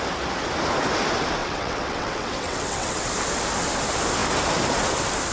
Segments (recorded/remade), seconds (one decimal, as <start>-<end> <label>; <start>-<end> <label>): 0.0-1.4 recorded; 1.4-3.0 remade; 3.0-5.3 recorded